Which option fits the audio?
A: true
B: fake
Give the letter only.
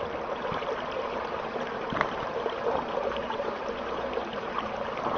A